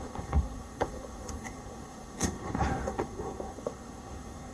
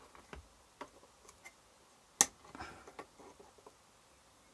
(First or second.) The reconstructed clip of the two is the first